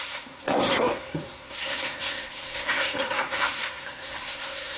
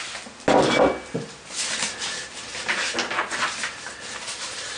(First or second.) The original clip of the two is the second